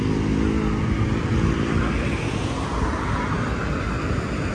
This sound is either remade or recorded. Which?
recorded